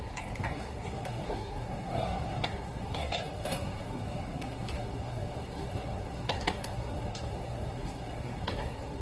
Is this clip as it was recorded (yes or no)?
no